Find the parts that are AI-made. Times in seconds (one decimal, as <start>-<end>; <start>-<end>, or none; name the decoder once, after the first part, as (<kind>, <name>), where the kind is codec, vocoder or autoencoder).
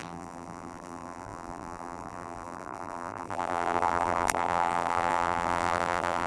0.0-6.3 (vocoder, BigVGAN v2)